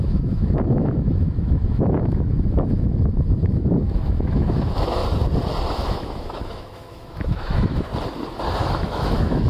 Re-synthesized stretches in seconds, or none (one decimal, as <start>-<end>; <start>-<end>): 0.0-5.0; 5.7-7.9; 8.6-9.5